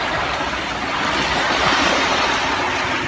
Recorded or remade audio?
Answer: recorded